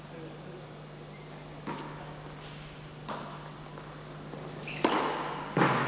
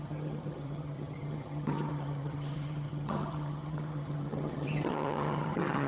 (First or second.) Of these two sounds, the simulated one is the second